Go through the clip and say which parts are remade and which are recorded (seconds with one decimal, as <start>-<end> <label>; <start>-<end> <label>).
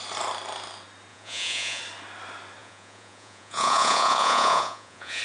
0.0-1.1 recorded; 1.1-1.8 remade; 1.8-2.6 recorded; 2.6-5.2 remade